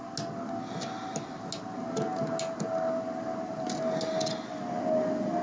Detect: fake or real real